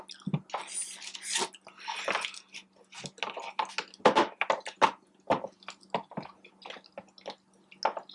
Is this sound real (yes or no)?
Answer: yes